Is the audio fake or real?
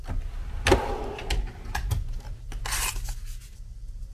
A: real